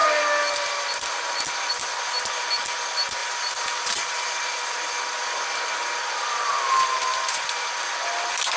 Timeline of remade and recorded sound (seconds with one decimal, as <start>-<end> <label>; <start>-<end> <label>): 0.0-3.2 recorded; 3.2-4.4 remade; 4.4-8.6 recorded